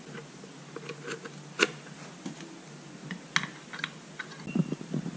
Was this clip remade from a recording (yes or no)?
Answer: no